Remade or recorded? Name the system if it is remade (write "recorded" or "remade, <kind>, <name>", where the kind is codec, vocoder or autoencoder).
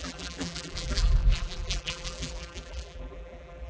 remade, vocoder, BigVGAN v2